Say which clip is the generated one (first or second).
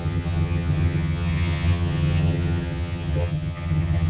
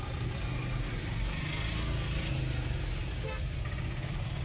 first